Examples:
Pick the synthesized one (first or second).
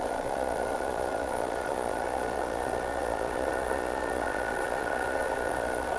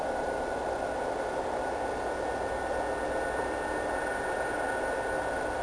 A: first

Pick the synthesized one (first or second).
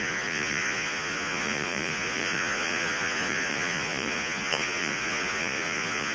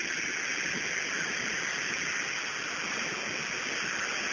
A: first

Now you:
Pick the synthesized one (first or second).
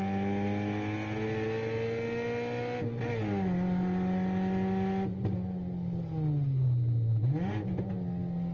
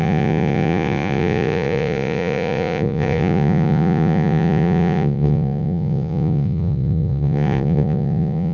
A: second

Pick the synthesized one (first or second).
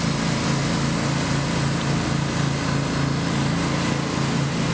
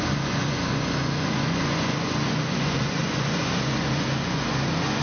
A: second